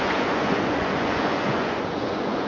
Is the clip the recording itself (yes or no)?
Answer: no